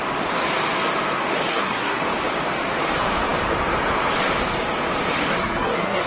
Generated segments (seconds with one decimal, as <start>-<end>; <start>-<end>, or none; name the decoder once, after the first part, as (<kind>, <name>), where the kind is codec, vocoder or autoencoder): 1.5-2.0 (codec, SNAC); 5.4-6.1